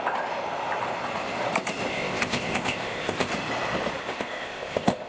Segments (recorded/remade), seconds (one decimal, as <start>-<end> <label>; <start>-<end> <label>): 0.0-1.9 recorded; 1.9-3.3 remade; 3.3-4.0 recorded; 4.0-5.1 remade

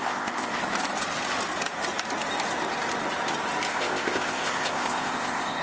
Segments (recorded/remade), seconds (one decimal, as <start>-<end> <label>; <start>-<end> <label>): 0.0-0.6 remade; 0.6-3.7 recorded; 3.7-5.6 remade

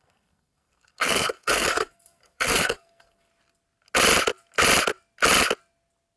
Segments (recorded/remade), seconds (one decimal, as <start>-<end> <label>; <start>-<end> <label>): 0.0-3.3 remade; 3.3-6.2 recorded